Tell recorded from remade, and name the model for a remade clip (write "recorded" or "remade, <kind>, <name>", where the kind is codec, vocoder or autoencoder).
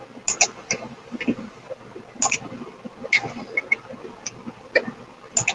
recorded